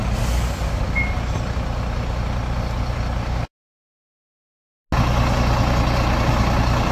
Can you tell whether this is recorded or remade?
recorded